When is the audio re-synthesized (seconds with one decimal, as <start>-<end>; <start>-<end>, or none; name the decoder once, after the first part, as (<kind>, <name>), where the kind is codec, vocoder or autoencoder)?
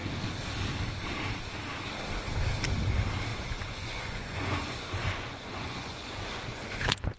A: 3.3-7.2 (vocoder, Vocos)